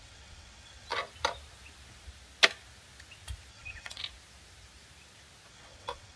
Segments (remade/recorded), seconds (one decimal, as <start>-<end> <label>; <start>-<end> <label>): 0.0-0.9 remade; 0.9-3.5 recorded; 3.5-4.0 remade; 4.0-5.5 recorded; 5.5-6.2 remade